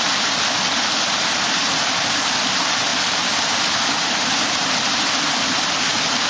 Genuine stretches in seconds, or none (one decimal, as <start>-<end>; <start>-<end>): 0.0-6.3